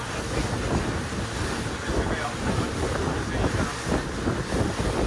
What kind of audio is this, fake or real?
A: real